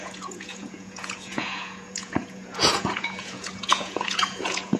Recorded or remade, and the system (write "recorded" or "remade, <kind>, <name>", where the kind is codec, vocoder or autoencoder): remade, vocoder, Vocos